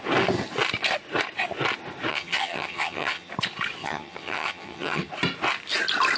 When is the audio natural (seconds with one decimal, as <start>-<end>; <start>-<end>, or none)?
0.0-2.1; 3.3-3.8; 5.1-6.2